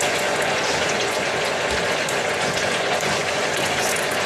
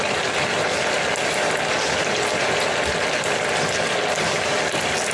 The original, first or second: second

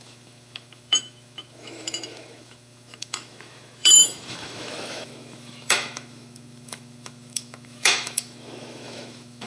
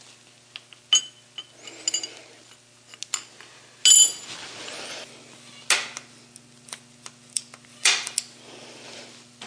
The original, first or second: second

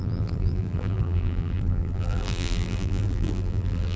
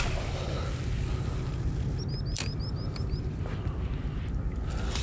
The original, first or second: second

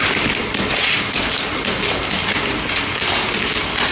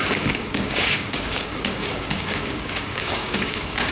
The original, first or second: first